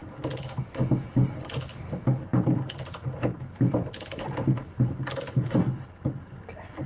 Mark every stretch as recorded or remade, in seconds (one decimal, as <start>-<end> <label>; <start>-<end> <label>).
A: 0.0-2.3 recorded; 2.3-5.6 remade; 5.6-6.9 recorded